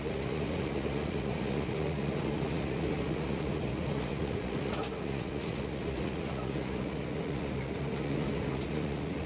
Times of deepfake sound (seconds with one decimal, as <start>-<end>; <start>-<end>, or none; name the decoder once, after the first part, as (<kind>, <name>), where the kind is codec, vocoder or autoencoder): 0.0-9.3 (vocoder, Vocos)